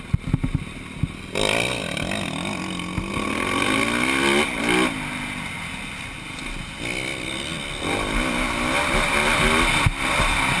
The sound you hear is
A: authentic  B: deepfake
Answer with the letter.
A